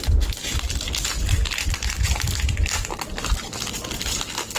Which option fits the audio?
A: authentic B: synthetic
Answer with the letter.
A